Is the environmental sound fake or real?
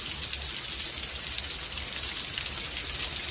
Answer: real